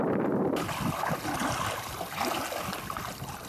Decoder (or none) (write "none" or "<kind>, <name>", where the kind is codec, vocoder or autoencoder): none